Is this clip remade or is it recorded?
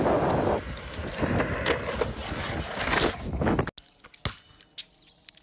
recorded